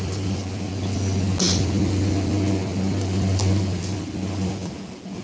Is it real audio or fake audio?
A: real